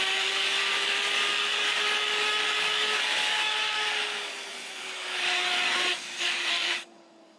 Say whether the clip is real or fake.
fake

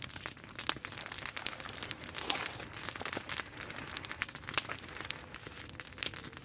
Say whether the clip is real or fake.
real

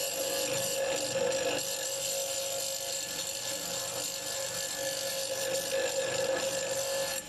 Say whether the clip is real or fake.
real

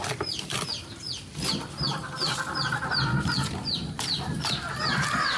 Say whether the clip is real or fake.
fake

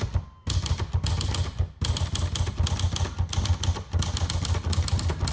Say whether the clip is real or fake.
real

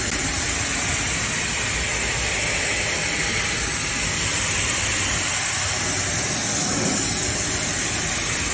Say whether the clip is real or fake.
real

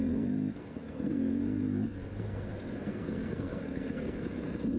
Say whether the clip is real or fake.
fake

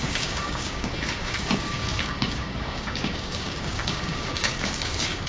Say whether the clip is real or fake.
fake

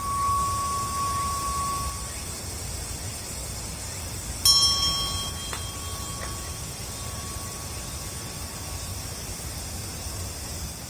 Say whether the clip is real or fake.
real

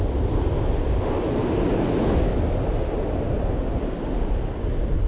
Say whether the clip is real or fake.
real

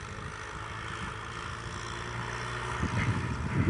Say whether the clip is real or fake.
real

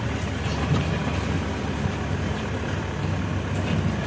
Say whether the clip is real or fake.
real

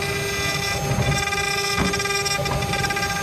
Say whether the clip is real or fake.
real